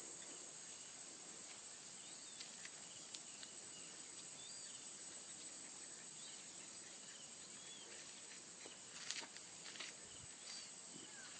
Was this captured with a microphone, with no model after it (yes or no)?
yes